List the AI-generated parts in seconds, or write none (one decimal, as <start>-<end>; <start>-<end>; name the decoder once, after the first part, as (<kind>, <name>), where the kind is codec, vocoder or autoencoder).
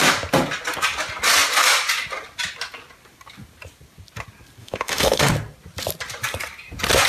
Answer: 4.6-5.3 (autoencoder, DAC-VAE)